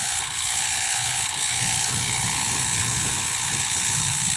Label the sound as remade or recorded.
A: remade